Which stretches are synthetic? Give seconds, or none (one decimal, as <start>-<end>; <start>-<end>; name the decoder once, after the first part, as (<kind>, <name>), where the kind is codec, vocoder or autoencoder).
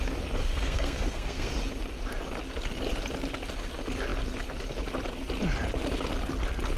0.4-1.5 (codec, SNAC)